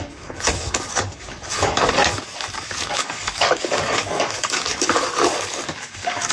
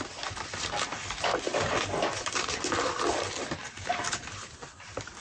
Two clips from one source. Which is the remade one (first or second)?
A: first